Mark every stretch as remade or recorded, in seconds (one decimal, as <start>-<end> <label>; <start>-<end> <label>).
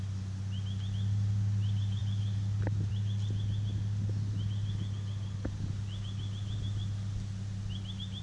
0.0-8.2 recorded